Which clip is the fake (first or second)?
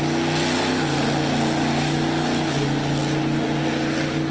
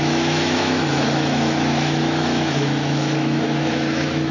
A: second